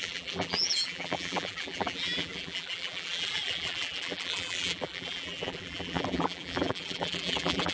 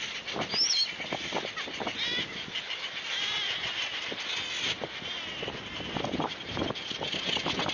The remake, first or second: first